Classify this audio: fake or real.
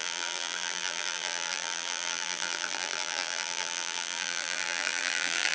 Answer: fake